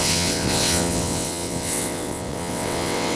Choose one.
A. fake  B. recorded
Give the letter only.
A